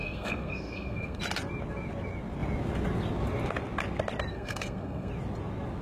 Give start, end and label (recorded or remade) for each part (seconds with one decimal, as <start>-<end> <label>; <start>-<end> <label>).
0.0-1.2 remade; 1.2-4.3 recorded; 4.3-5.1 remade; 5.1-5.8 recorded